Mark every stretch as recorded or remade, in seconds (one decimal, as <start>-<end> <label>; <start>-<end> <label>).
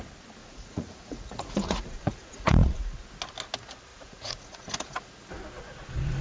0.0-0.4 recorded; 0.4-3.0 remade; 3.0-3.9 recorded; 3.9-4.9 remade; 4.9-6.2 recorded